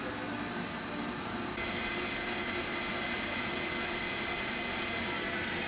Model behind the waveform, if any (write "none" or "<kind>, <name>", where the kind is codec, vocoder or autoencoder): none